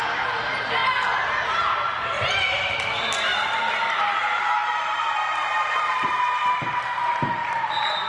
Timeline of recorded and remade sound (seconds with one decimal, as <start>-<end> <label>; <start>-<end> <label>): 0.0-0.8 remade; 0.8-3.7 recorded; 3.7-8.1 remade